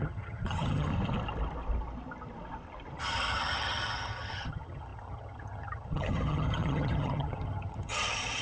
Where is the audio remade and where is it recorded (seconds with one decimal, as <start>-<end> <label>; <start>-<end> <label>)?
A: 0.0-0.9 remade; 0.9-3.0 recorded; 3.0-8.4 remade